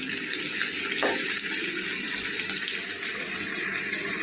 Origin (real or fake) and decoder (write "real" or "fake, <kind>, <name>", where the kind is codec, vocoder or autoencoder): real